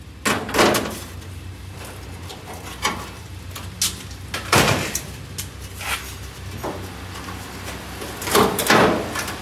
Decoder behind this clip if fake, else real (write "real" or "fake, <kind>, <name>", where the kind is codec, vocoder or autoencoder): real